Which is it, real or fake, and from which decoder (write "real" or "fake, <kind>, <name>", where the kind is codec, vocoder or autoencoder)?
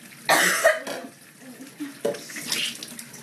real